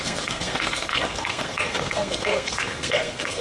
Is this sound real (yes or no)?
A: no